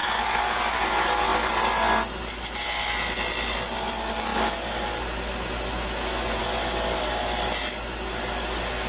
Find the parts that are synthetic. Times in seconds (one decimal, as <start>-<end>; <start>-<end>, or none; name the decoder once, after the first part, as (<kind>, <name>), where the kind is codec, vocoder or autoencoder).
none